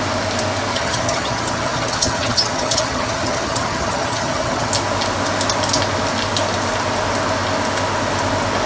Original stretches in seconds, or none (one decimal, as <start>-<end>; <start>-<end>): 0.0-0.7; 4.7-8.7